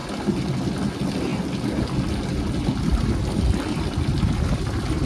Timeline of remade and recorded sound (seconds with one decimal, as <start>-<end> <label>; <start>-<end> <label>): 0.0-5.1 recorded